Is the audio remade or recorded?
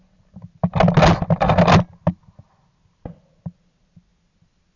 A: recorded